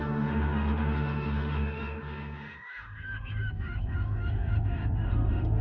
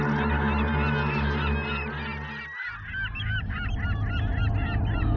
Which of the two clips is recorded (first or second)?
second